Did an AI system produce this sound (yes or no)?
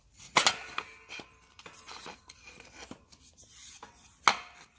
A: no